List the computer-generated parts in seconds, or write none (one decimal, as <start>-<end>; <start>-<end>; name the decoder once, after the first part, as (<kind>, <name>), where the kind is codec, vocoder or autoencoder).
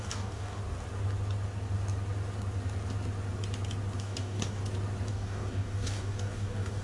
0.0-0.6 (codec, DAC); 4.0-4.6; 5.1-6.8